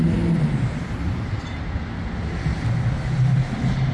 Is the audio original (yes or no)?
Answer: yes